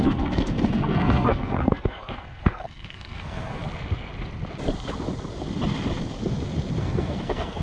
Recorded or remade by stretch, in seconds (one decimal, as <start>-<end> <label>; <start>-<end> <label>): 0.0-3.6 remade; 3.6-6.8 recorded; 6.8-7.6 remade